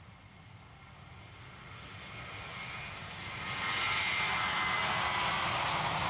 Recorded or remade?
recorded